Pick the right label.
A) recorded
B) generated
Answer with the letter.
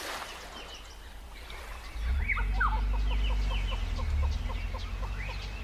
A